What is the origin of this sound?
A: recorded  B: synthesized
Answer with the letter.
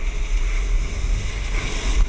A